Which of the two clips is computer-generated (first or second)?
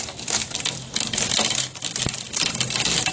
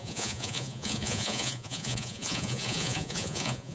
second